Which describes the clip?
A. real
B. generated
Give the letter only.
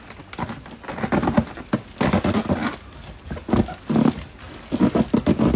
A